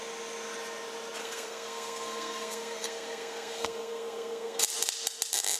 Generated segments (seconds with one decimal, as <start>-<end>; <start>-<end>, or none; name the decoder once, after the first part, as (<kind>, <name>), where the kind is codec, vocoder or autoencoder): 1.2-4.6 (codec, SNAC)